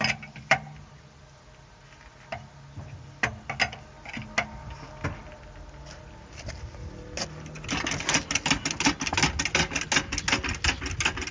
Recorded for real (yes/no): yes